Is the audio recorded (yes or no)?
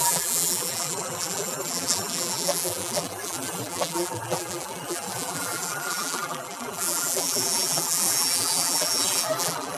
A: no